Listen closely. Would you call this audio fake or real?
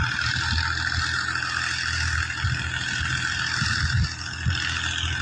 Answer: real